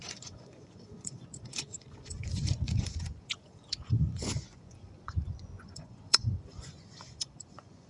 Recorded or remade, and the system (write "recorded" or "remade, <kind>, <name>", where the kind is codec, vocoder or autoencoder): remade, vocoder, Vocos